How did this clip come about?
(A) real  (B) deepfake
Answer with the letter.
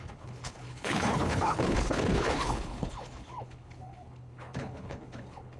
B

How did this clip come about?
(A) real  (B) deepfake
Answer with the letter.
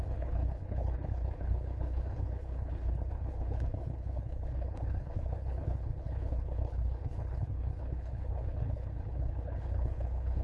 B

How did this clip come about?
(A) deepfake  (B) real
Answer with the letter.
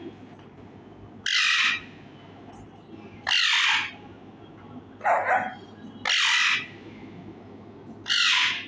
B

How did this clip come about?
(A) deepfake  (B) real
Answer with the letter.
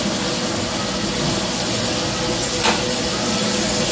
B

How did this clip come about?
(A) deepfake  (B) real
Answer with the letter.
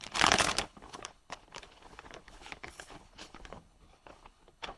A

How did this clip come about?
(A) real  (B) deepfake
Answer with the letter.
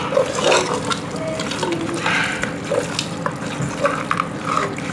A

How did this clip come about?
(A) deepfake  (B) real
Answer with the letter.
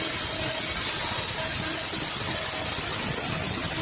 B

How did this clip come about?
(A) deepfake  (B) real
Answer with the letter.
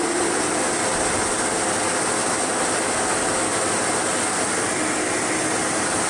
B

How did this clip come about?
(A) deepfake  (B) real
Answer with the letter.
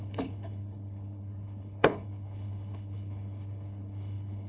A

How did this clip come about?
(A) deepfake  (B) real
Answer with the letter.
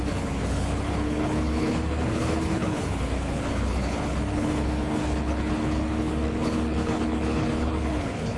A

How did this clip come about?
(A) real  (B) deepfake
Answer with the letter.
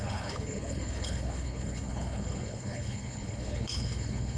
B